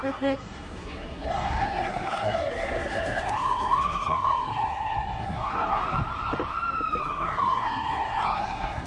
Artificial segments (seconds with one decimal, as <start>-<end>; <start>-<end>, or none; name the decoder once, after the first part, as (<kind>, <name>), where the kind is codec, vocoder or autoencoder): 0.0-5.8 (codec, SNAC); 7.0-8.9